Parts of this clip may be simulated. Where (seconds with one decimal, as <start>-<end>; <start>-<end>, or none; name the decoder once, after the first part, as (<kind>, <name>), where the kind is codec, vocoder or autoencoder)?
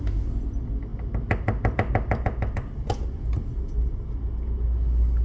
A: none